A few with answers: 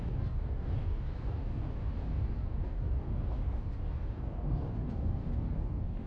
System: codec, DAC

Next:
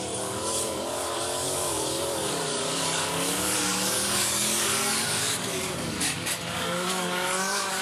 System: codec, DAC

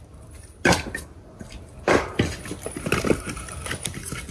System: none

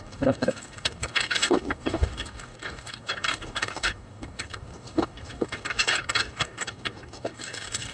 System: codec, DAC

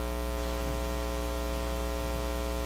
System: none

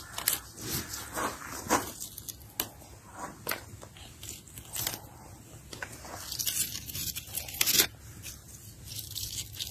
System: none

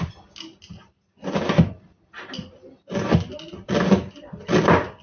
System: none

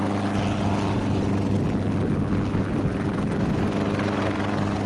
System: none